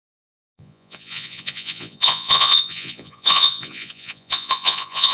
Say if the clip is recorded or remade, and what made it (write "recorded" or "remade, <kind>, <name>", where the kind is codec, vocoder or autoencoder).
remade, vocoder, Vocos